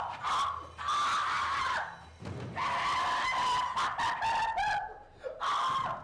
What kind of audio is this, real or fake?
real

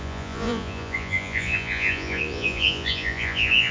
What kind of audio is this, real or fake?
fake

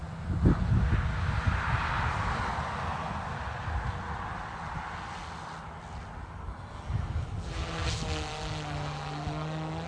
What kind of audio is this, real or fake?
real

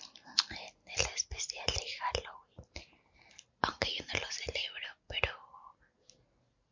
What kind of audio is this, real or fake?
real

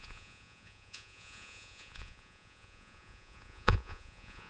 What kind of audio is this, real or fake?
fake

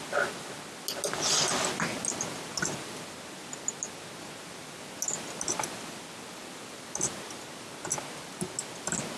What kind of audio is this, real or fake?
real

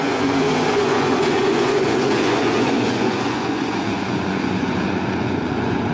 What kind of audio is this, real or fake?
fake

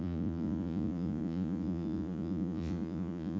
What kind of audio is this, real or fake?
fake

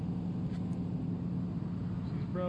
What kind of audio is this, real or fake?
real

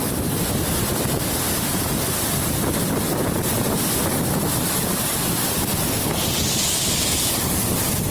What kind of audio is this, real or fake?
real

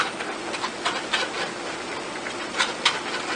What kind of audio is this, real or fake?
real